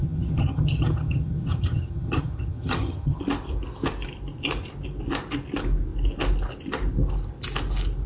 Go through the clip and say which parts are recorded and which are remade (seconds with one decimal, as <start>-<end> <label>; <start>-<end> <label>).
0.0-3.2 remade; 3.2-8.1 recorded